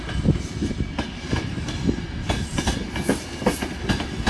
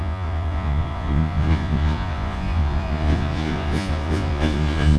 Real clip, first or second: first